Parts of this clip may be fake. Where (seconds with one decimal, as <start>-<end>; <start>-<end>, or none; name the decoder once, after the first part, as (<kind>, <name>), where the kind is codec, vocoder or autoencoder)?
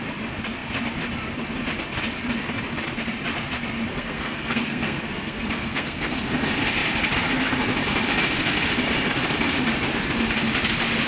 3.9-6.1 (codec, SNAC)